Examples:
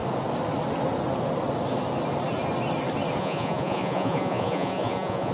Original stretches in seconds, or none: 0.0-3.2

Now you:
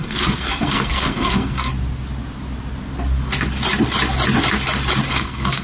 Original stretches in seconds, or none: 1.7-5.1

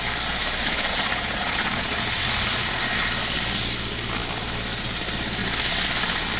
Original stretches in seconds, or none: 0.0-0.9; 2.8-6.4

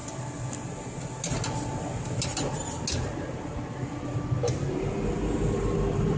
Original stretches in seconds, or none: 0.0-6.2

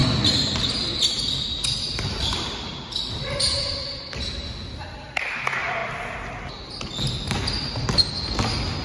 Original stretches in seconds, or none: 0.0-8.8